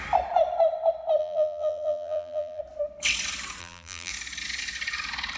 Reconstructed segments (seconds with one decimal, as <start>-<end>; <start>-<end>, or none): 1.2-2.6; 3.6-4.1